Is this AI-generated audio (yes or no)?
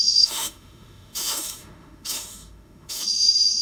yes